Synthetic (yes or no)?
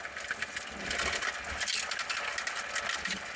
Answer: no